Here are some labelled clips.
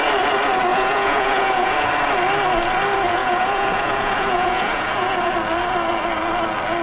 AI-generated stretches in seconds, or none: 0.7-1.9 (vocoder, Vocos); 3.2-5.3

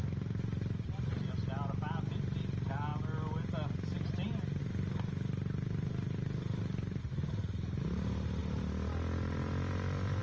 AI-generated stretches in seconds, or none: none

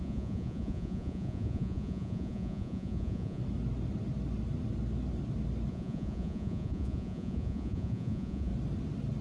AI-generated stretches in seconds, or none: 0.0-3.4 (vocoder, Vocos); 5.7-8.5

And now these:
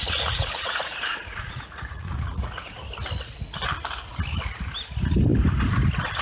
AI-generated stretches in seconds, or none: 0.0-2.8 (vocoder, Vocos)